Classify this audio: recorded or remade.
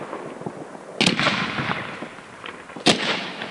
recorded